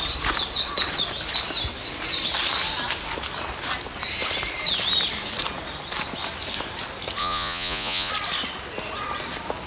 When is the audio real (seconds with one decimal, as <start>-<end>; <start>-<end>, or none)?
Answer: 0.0-7.2; 8.1-9.7